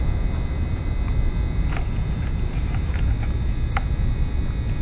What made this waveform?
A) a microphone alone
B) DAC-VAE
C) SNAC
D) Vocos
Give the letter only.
A